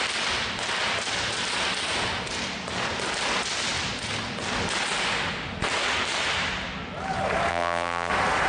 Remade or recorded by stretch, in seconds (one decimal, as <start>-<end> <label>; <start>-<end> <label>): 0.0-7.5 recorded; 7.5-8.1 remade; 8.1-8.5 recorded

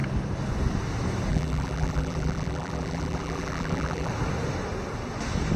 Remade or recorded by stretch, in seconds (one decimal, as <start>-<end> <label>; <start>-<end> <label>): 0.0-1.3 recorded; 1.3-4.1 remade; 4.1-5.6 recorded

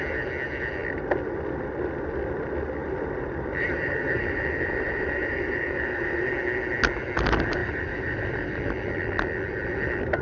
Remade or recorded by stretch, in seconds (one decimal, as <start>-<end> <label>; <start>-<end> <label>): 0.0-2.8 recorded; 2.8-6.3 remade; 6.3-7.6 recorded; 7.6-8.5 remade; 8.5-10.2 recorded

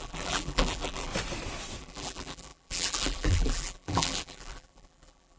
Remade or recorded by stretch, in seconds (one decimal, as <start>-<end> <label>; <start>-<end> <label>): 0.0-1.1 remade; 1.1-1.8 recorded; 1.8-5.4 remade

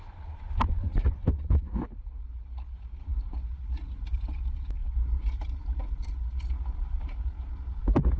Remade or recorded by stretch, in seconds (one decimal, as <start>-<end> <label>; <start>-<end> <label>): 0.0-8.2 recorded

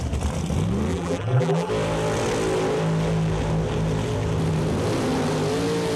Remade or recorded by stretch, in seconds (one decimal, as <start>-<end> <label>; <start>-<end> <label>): 0.0-0.9 recorded; 0.9-1.7 remade; 1.7-6.0 recorded

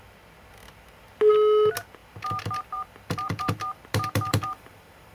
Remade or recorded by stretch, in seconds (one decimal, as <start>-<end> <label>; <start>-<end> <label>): 0.0-2.0 recorded; 2.0-5.1 remade